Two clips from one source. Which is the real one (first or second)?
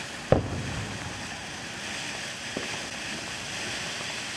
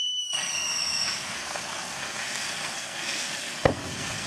first